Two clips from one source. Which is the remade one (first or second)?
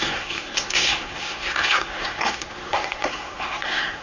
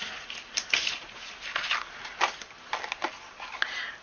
first